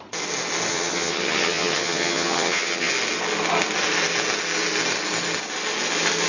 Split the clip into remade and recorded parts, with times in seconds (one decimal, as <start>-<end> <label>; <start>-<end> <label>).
0.0-0.7 recorded; 0.7-2.9 remade; 2.9-6.3 recorded